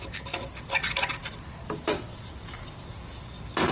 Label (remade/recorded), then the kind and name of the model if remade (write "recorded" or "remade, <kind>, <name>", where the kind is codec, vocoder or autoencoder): recorded